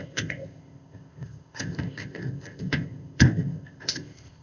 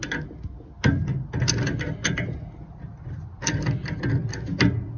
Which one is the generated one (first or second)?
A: first